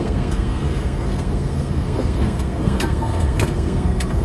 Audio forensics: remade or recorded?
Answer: remade